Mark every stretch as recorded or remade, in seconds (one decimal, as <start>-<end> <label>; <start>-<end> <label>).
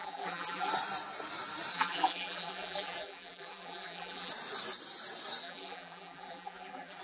0.0-0.7 remade; 0.7-1.7 recorded; 1.7-4.3 remade; 4.3-5.4 recorded; 5.4-7.0 remade